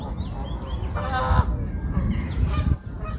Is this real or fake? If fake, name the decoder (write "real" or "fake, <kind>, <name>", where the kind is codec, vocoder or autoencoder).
real